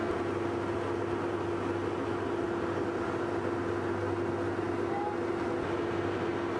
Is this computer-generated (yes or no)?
no